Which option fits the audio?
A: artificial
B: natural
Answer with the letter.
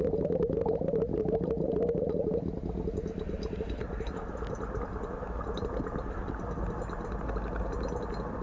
B